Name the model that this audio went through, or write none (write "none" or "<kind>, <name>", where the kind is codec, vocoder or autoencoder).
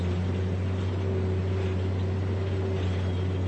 none